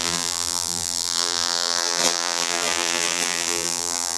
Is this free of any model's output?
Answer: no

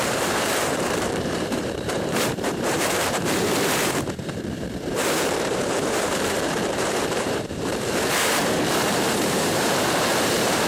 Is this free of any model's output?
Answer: no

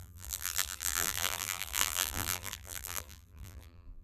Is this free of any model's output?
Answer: no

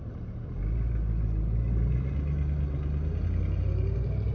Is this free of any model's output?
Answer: yes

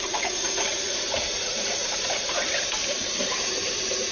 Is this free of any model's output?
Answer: no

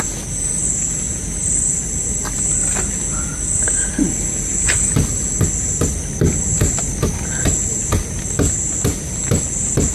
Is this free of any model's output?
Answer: yes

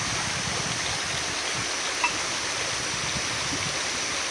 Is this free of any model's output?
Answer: yes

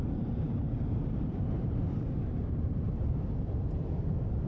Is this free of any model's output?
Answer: no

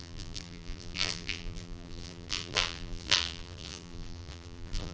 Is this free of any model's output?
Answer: no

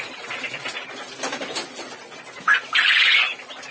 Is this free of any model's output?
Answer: yes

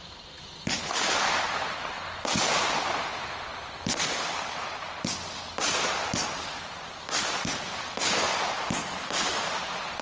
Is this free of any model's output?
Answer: yes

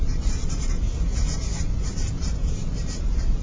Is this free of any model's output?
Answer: no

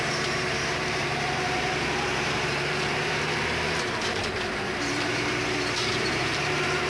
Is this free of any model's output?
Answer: no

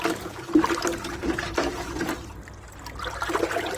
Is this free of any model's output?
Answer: no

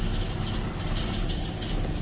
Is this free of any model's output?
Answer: yes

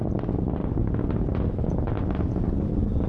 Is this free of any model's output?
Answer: yes